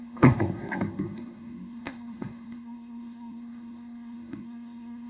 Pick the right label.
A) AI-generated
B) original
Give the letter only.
A